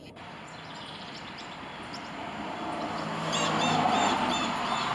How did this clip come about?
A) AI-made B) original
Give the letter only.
B